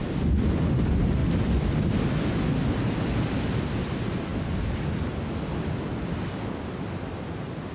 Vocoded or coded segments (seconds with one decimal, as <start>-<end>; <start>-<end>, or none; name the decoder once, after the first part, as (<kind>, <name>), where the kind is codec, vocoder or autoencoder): none

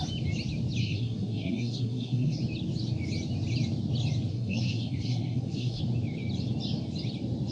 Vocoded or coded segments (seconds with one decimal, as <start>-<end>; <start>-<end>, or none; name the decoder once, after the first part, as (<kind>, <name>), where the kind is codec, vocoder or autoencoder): 0.8-2.4 (codec, SNAC); 4.3-5.8

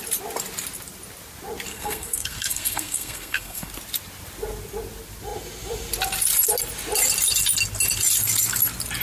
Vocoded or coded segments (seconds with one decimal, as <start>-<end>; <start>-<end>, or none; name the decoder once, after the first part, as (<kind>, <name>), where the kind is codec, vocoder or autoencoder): 1.7-3.7 (codec, SNAC)

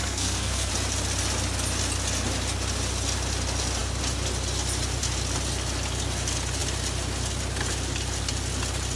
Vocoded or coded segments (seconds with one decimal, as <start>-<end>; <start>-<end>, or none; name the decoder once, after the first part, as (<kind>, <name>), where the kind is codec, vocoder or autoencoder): 0.0-0.7 (codec, SNAC)

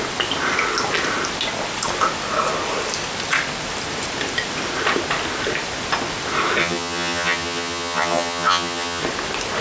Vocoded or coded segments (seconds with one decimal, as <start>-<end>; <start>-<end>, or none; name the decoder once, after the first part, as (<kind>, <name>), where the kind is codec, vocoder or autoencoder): 6.6-9.0 (vocoder, HiFi-GAN)

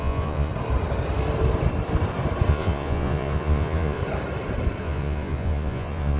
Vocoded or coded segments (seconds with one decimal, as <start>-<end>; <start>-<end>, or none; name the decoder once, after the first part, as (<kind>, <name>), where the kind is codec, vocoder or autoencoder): 0.0-0.5 (vocoder, Vocos); 2.5-4.0; 4.8-6.2

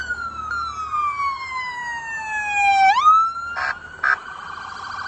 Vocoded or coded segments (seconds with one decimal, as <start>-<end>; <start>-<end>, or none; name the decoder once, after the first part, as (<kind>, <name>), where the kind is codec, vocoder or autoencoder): 0.9-1.8 (vocoder, BigVGAN v2)

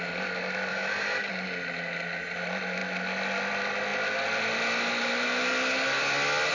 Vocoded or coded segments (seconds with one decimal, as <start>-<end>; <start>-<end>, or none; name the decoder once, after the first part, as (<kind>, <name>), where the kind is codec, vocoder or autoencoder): 0.7-1.3 (autoencoder, DAC-VAE)